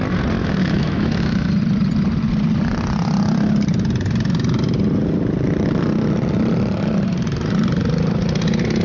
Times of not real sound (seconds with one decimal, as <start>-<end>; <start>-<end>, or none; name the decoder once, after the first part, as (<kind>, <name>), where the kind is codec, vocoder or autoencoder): 0.4-1.5 (autoencoder, DAC-VAE)